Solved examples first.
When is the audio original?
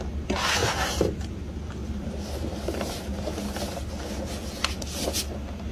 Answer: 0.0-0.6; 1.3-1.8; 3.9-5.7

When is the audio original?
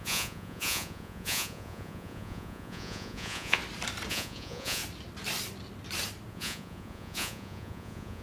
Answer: 3.6-4.1; 4.8-6.3